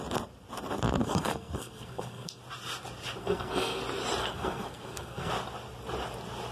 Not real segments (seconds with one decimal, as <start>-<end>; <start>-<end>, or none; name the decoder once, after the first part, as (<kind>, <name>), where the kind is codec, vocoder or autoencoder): 1.0-2.4 (codec, SNAC); 3.2-3.8; 4.2-5.3